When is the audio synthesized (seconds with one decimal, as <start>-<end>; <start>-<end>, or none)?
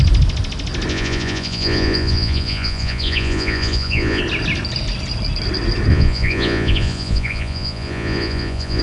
0.9-4.2; 5.9-8.8